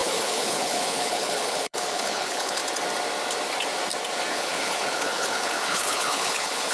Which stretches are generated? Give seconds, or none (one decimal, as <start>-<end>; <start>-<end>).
0.0-2.6; 4.3-6.7